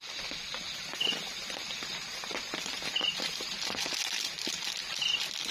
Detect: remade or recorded recorded